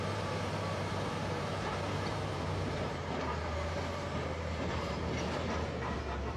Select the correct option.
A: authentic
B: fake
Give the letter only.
B